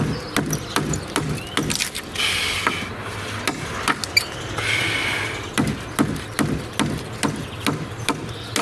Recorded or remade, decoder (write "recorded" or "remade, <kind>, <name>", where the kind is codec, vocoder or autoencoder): recorded